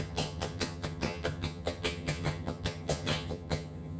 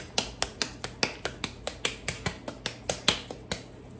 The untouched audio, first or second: second